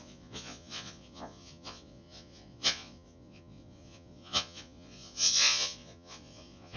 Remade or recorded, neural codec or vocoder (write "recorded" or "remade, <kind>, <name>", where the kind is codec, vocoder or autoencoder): remade, vocoder, Vocos